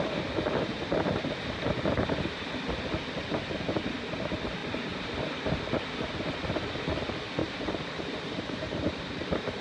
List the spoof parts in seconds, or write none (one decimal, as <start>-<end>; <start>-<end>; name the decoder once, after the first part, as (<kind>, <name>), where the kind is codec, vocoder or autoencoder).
0.7-2.6 (vocoder, BigVGAN v2); 7.4-9.6